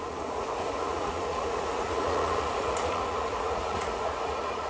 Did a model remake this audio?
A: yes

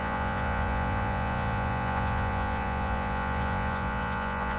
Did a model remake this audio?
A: yes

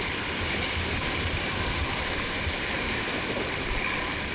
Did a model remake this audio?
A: no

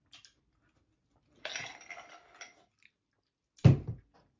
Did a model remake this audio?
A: no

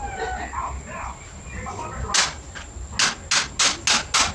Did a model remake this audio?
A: no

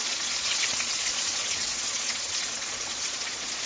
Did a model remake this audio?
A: yes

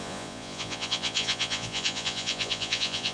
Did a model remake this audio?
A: yes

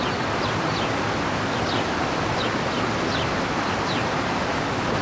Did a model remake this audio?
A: no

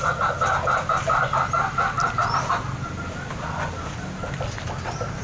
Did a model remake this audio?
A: no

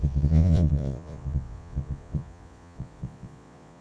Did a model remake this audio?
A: yes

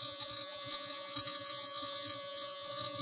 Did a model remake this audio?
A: yes